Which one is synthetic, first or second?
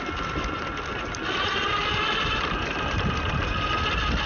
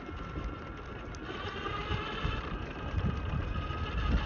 first